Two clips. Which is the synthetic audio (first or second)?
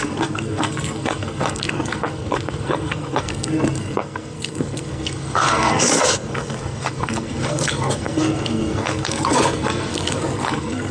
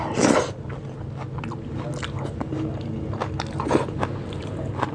first